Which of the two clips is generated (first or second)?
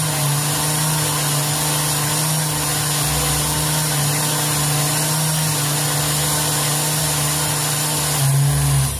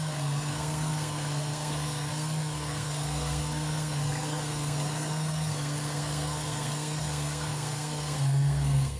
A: second